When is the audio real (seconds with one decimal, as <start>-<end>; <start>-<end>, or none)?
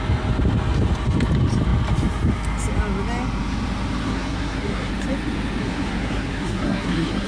0.0-4.0; 4.9-5.6